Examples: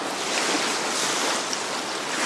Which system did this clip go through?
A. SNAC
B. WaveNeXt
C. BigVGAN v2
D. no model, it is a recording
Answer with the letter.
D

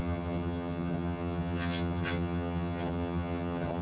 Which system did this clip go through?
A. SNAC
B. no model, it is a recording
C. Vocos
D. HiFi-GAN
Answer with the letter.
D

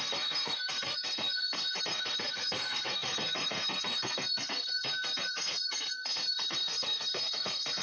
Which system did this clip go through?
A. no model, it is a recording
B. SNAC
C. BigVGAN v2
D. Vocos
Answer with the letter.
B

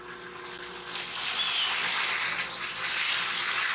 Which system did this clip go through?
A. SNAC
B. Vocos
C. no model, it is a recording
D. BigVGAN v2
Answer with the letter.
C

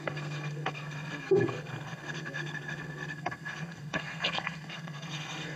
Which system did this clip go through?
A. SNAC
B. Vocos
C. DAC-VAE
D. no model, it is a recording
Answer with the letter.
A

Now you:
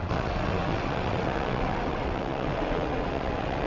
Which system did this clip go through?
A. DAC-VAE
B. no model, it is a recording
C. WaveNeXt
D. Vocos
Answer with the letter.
C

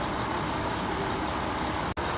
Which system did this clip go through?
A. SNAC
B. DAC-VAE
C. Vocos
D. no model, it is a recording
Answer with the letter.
D